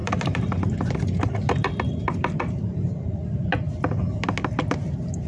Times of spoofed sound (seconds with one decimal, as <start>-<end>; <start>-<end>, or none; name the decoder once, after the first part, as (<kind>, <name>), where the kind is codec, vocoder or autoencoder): 0.0-3.2 (vocoder, BigVGAN v2); 4.8-5.3